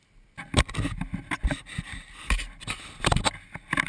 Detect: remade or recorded recorded